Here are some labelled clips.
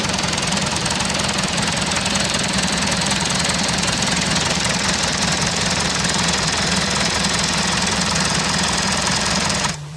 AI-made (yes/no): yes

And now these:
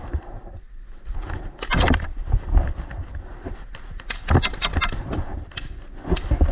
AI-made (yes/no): no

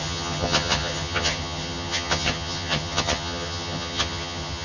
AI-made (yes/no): yes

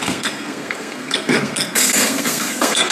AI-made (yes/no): yes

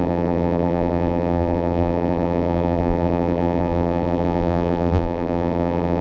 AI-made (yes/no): yes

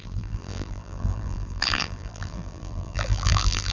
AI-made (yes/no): yes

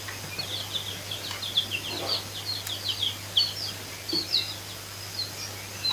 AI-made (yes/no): no